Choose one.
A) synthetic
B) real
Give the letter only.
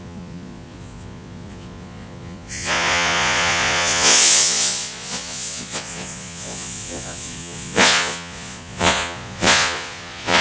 A